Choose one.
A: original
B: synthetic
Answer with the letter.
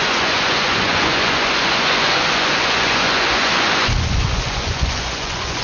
B